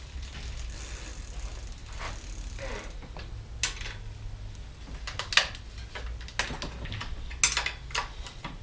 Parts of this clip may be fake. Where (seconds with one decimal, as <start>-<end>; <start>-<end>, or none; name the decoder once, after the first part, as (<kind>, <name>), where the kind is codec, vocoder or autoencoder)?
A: none